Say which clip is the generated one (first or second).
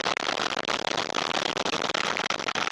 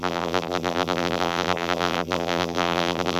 second